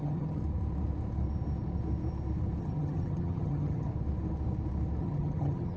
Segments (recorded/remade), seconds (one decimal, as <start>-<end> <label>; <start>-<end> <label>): 0.0-0.4 remade; 0.4-2.6 recorded; 2.6-3.9 remade; 3.9-5.0 recorded; 5.0-5.8 remade